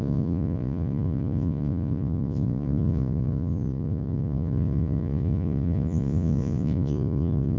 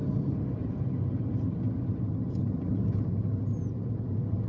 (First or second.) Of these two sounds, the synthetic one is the first